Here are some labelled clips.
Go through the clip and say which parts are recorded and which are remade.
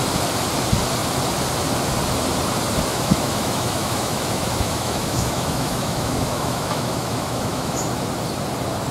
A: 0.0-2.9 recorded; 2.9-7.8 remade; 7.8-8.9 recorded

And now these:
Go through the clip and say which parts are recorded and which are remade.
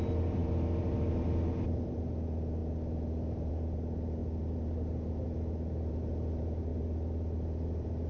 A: 0.0-8.1 recorded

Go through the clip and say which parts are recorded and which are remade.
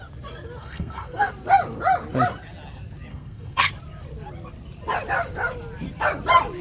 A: 0.0-0.6 recorded; 0.6-1.3 remade; 1.3-3.1 recorded; 3.1-3.7 remade; 3.7-6.6 recorded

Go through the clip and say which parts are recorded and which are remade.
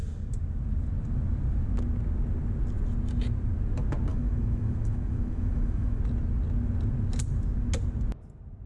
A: 0.0-4.1 recorded; 4.1-6.0 remade; 6.0-8.7 recorded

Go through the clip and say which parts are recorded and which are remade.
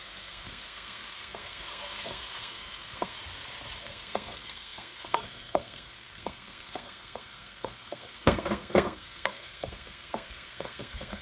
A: 0.0-3.2 remade; 3.2-3.8 recorded; 3.8-11.2 remade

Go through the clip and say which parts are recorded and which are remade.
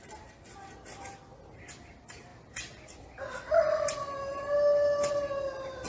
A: 0.0-5.9 recorded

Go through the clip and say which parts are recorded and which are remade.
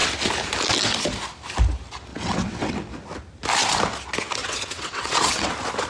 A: 0.0-2.1 recorded; 2.1-2.7 remade; 2.7-4.4 recorded; 4.4-5.5 remade; 5.5-5.9 recorded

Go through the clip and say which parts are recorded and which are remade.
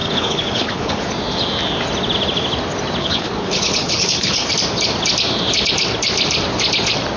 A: 0.0-1.0 remade; 1.0-3.0 recorded; 3.0-4.5 remade; 4.5-7.2 recorded